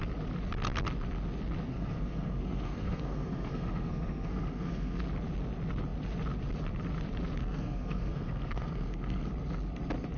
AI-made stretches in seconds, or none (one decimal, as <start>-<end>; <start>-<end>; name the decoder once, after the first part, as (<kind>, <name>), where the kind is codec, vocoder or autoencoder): 1.7-5.0 (codec, SNAC); 7.4-9.3